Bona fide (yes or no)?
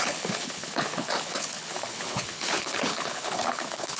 no